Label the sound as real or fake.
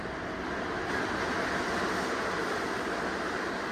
real